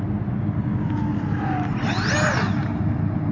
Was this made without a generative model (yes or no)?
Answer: yes